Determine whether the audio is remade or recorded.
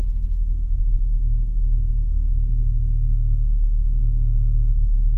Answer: remade